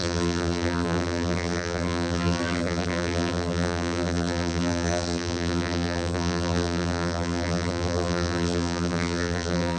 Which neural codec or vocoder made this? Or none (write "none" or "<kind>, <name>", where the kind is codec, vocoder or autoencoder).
vocoder, BigVGAN v2